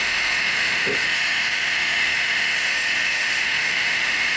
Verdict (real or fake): fake